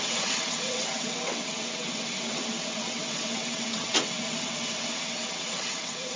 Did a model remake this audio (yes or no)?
yes